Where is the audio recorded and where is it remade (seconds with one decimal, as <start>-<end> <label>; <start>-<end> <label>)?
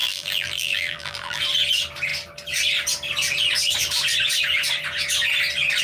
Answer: 0.0-1.4 remade; 1.4-5.8 recorded